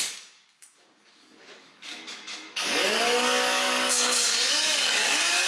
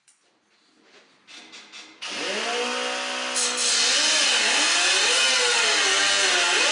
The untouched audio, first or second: second